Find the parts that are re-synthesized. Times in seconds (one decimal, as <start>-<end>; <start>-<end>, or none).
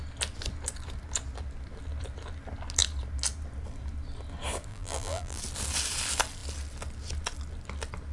4.7-5.4